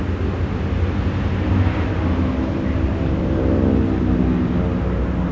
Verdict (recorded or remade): recorded